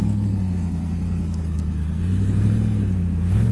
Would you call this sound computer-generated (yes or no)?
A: yes